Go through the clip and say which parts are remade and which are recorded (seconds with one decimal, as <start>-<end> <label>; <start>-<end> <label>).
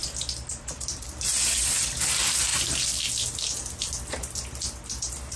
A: 0.0-5.4 recorded